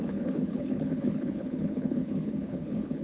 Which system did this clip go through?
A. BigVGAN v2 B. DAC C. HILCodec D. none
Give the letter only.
C